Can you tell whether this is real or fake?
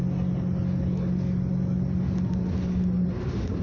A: real